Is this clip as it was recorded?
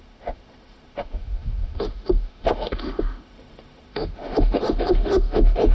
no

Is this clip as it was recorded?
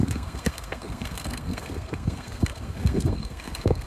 no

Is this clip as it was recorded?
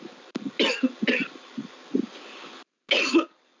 yes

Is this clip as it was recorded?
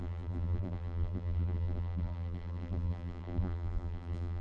no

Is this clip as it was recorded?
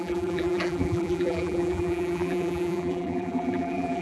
no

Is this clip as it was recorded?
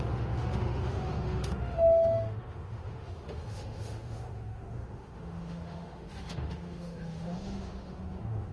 no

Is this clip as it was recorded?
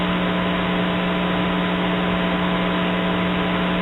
yes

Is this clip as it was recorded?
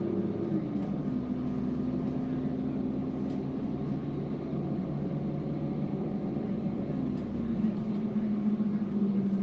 yes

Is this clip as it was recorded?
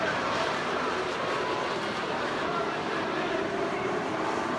no